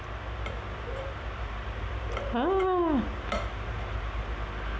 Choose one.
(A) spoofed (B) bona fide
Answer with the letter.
B